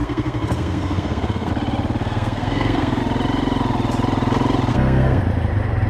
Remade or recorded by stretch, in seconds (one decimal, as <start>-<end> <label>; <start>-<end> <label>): 0.0-1.5 remade; 1.5-2.0 recorded; 2.0-3.0 remade; 3.0-4.7 recorded; 4.7-5.2 remade; 5.2-5.9 recorded